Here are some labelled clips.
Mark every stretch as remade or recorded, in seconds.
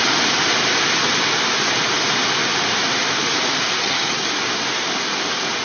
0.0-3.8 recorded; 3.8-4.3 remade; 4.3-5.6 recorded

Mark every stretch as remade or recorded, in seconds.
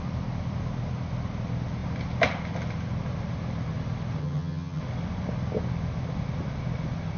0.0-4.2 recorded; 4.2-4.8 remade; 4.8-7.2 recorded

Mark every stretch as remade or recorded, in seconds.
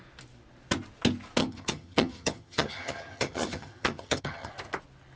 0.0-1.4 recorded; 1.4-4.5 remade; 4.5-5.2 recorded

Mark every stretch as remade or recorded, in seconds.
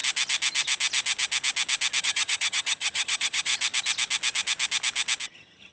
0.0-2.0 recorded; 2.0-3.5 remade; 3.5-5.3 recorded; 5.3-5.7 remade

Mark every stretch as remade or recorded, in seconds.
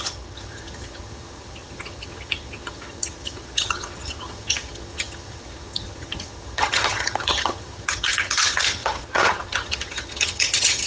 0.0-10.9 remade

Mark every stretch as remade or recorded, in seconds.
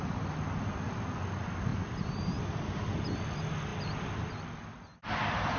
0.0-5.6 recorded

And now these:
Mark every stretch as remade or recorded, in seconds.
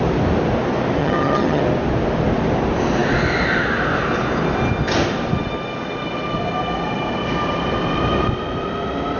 0.0-1.0 recorded; 1.0-1.6 remade; 1.6-9.2 recorded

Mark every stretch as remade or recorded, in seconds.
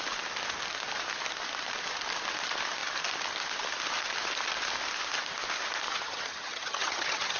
0.0-5.9 recorded; 5.9-7.4 remade